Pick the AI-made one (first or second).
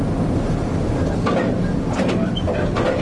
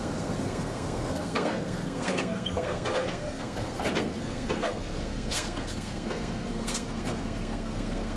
second